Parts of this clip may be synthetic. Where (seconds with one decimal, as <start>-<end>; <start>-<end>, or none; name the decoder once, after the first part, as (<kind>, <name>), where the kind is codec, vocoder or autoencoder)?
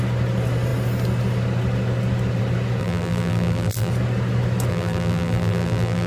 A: 2.8-3.9 (vocoder, BigVGAN v2); 4.7-6.1